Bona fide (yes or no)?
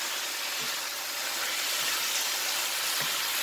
yes